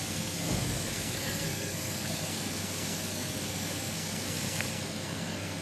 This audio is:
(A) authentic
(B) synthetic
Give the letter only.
B